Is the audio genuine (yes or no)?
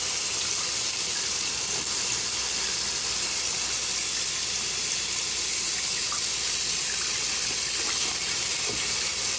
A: no